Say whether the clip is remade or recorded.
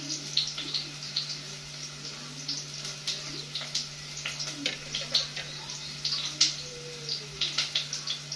recorded